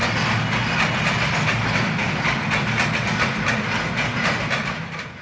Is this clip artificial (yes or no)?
no